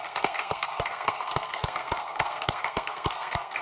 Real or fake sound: fake